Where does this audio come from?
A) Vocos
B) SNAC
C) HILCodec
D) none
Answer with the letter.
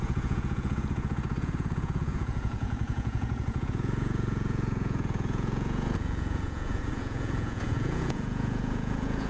A